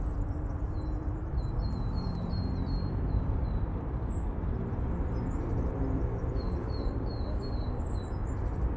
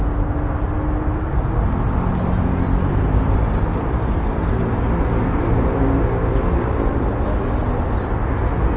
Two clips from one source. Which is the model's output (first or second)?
first